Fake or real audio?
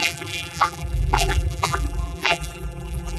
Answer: fake